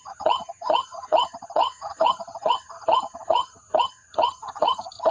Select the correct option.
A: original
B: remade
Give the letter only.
B